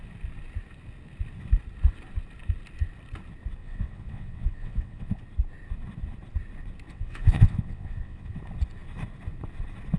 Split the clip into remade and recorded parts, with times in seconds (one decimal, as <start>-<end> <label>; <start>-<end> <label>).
0.0-3.6 recorded; 3.6-5.2 remade; 5.2-6.9 recorded; 6.9-8.4 remade; 8.4-10.0 recorded